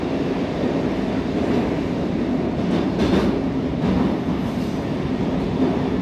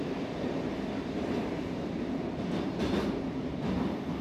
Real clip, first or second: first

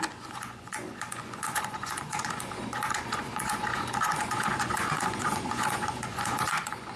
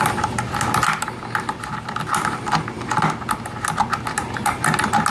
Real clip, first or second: second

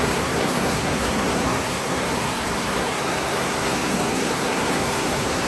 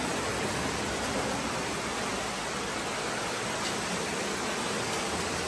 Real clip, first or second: second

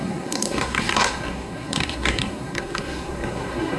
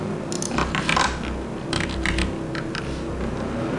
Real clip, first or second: second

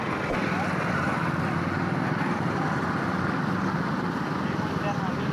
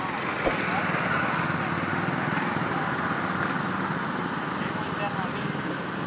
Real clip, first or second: second